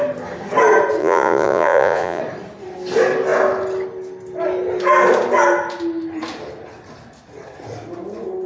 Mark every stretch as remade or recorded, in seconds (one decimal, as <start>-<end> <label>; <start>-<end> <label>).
0.0-1.0 recorded; 1.0-2.2 remade; 2.2-8.5 recorded